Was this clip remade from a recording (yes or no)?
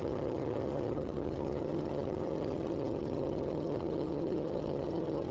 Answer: yes